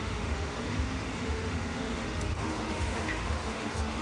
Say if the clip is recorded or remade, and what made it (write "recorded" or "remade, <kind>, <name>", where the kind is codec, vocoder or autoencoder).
remade, autoencoder, DAC-VAE